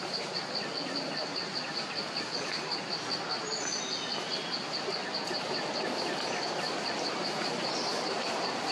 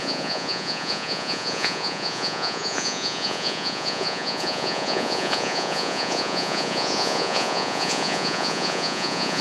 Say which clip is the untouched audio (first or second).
first